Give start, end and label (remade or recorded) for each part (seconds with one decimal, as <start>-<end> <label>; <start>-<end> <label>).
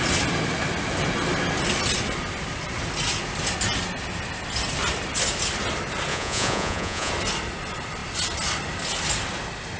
0.0-6.1 recorded; 6.1-7.1 remade; 7.1-9.8 recorded